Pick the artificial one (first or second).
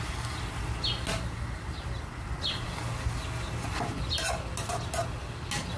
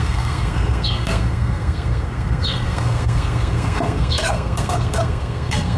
second